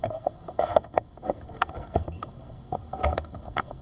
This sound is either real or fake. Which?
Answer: fake